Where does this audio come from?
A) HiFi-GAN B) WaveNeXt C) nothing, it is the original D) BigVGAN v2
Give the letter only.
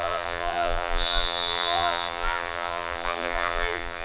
D